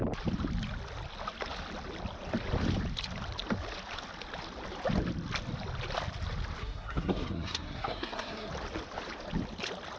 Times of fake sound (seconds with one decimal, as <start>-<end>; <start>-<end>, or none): 6.6-8.5